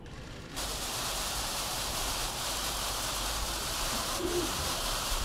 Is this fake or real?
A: fake